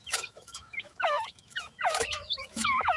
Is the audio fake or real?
fake